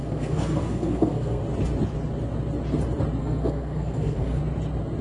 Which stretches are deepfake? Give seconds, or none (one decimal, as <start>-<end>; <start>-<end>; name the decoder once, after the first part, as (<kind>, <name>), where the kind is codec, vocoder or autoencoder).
0.0-1.4 (codec, SNAC); 3.2-4.4